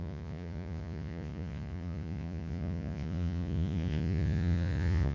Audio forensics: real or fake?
fake